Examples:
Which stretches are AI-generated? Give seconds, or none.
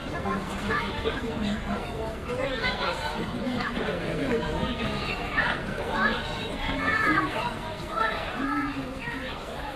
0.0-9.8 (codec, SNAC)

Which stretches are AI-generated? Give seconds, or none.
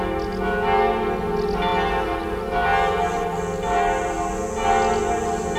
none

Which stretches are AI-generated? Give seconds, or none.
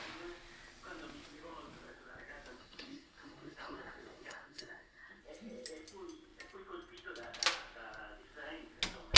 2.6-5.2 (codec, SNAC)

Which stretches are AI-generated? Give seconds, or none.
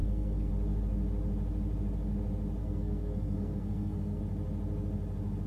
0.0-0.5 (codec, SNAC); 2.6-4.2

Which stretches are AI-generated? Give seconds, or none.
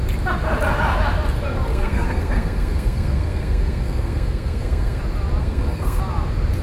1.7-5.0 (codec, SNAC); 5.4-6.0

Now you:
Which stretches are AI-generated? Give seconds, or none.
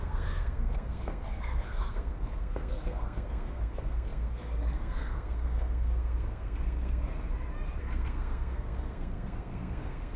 0.0-7.1 (codec, SNAC); 7.8-10.2